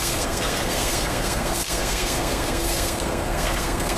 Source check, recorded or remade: remade